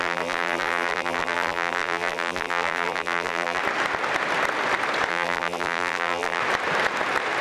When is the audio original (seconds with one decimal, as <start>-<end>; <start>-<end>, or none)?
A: 3.6-5.1; 6.4-7.4